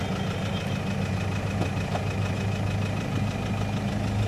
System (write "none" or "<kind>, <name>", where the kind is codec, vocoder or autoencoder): none